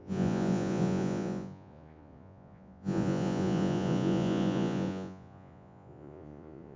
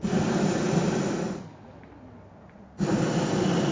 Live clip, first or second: second